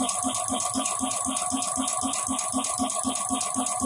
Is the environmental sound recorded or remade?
remade